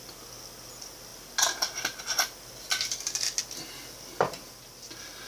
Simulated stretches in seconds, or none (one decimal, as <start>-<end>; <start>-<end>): none